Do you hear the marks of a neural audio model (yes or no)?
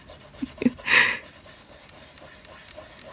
no